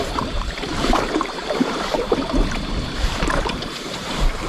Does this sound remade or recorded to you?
remade